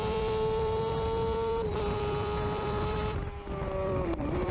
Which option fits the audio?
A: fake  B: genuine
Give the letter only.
A